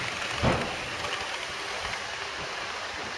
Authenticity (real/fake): real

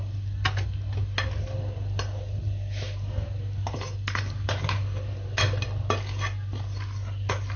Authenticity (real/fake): real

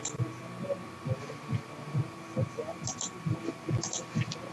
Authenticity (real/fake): real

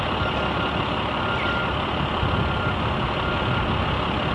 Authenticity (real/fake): real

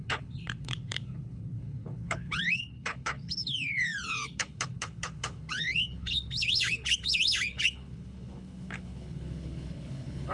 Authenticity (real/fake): fake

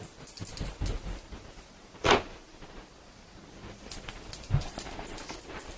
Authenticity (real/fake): real